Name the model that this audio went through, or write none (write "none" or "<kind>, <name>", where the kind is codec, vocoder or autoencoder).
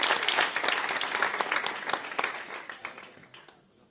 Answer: none